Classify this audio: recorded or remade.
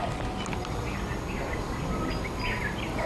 recorded